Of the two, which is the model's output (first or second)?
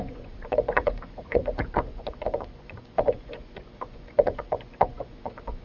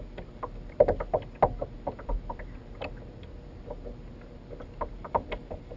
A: first